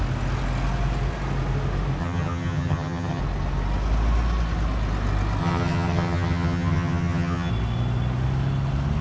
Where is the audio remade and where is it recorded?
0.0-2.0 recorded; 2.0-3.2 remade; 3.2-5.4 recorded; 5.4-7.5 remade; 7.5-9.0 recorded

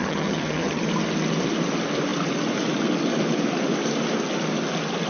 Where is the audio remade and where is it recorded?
0.0-0.8 remade; 0.8-5.1 recorded

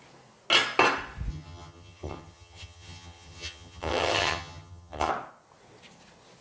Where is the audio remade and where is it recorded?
0.0-1.3 recorded; 1.3-5.1 remade; 5.1-6.4 recorded

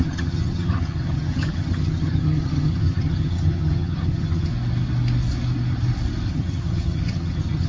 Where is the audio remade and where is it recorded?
0.0-4.5 remade; 4.5-6.3 recorded; 6.3-7.7 remade